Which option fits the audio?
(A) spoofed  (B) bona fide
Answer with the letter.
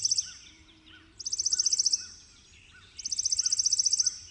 B